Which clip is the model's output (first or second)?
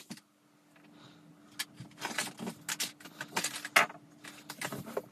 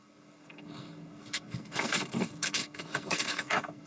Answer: second